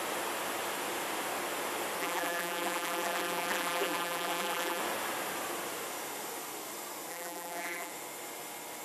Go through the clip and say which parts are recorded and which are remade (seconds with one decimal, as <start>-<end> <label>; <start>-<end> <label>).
0.0-2.0 recorded; 2.0-4.8 remade; 4.8-7.1 recorded; 7.1-7.9 remade; 7.9-8.8 recorded